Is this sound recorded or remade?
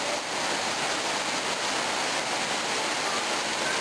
recorded